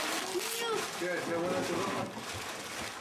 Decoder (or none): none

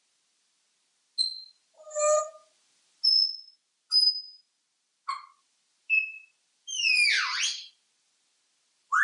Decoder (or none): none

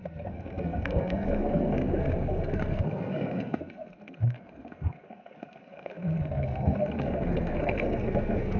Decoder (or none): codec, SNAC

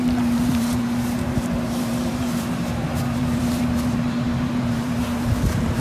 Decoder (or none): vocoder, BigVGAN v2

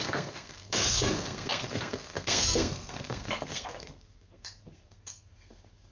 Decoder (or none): codec, SNAC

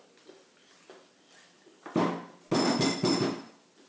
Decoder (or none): none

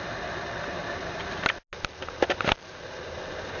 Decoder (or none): none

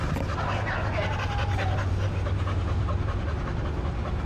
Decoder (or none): none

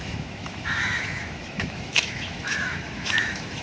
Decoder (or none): autoencoder, DAC-VAE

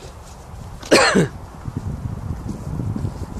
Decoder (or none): none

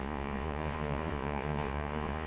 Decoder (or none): vocoder, Vocos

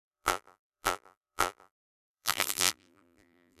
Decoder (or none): vocoder, BigVGAN v2